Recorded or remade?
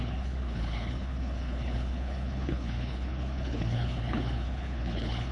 remade